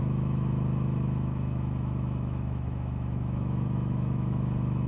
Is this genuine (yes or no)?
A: no